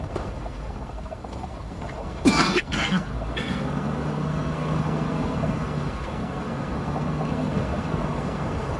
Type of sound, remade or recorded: remade